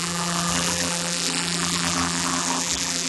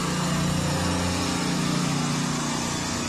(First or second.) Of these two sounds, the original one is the second